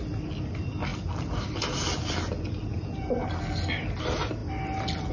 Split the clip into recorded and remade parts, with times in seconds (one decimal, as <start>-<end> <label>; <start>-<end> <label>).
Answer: 0.0-5.1 recorded